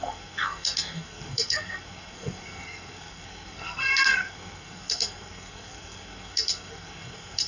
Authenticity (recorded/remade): remade